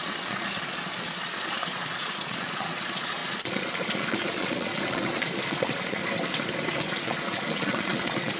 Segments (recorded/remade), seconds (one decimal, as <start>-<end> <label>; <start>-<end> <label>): 0.0-6.0 remade; 6.0-6.9 recorded; 6.9-8.4 remade